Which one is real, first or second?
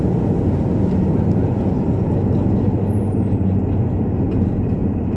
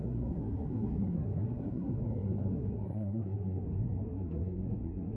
first